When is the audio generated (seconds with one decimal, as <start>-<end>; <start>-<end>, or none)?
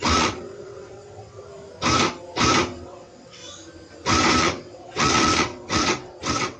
0.0-1.5; 2.8-3.4; 4.4-6.6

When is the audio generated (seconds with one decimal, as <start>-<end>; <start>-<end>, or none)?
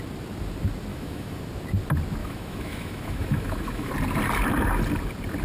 0.9-1.4; 2.2-3.9